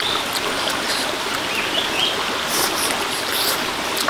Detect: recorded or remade recorded